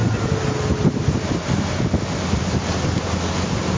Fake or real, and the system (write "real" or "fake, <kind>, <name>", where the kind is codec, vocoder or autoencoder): real